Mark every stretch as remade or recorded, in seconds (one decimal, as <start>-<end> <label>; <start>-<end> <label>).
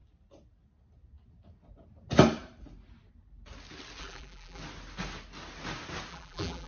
0.0-4.0 recorded; 4.0-4.6 remade; 4.6-6.1 recorded; 6.1-6.7 remade